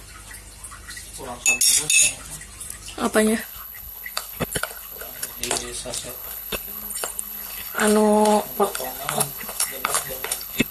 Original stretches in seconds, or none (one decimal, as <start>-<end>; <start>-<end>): 0.0-3.4; 5.4-6.1